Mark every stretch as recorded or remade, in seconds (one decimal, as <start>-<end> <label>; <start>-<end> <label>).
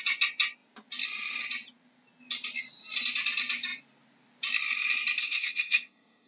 0.0-5.2 recorded; 5.2-6.3 remade